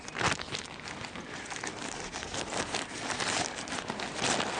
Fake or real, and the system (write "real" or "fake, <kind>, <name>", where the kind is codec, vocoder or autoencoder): real